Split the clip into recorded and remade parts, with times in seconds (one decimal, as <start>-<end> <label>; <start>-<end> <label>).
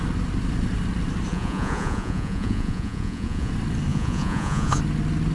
0.0-1.3 recorded; 1.3-3.5 remade; 3.5-3.9 recorded; 3.9-4.8 remade; 4.8-5.3 recorded